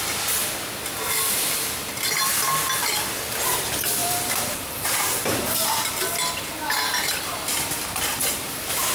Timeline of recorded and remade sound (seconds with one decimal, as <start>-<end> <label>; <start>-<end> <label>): 0.0-4.0 recorded; 4.0-5.5 remade; 5.5-8.9 recorded